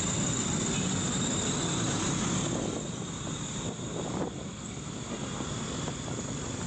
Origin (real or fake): real